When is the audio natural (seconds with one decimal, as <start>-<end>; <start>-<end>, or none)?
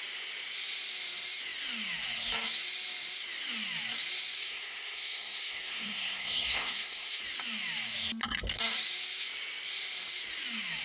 0.0-4.4; 7.2-10.8